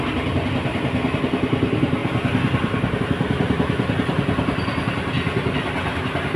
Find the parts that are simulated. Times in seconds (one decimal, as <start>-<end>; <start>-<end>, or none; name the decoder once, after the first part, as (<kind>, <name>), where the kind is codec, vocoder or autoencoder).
2.0-3.0 (vocoder, BigVGAN v2)